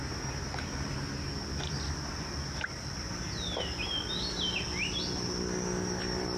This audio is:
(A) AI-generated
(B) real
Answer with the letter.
B